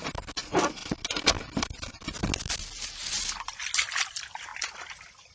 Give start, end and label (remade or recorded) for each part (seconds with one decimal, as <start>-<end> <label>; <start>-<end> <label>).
0.0-5.3 recorded